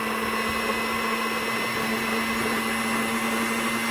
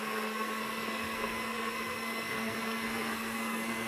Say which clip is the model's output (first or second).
second